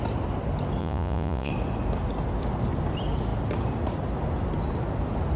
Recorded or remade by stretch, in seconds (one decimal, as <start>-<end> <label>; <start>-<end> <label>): 0.0-0.8 recorded; 0.8-1.5 remade; 1.5-5.4 recorded